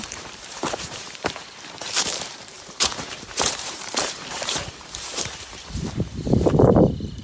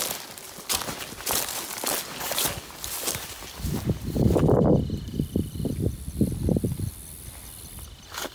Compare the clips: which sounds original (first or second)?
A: second